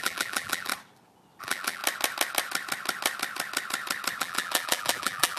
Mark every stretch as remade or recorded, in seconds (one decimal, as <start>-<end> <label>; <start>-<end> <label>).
0.0-0.7 remade; 0.7-1.4 recorded; 1.4-1.8 remade; 1.8-4.2 recorded; 4.2-5.4 remade